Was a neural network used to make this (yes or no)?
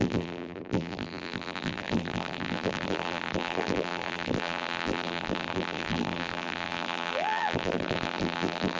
yes